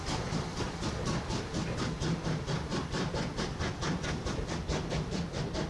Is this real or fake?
fake